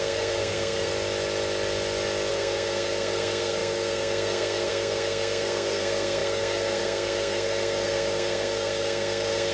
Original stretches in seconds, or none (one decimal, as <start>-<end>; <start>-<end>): 0.9-2.3